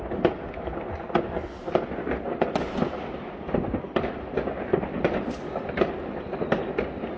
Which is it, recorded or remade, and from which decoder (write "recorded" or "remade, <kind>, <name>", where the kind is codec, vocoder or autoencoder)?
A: recorded